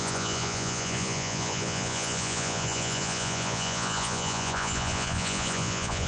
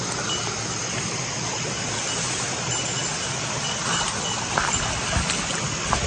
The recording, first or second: second